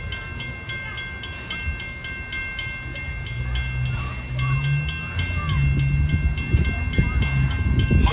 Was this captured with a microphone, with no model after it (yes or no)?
yes